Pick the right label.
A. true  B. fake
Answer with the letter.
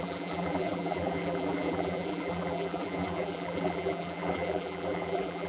B